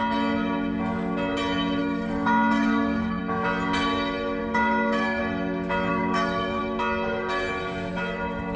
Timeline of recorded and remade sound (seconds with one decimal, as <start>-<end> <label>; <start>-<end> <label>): 0.0-1.8 recorded; 1.8-3.2 remade; 3.2-4.4 recorded; 4.4-5.2 remade; 5.2-5.9 recorded; 5.9-6.6 remade; 6.6-8.6 recorded